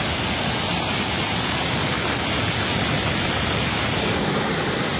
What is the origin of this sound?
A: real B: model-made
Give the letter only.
A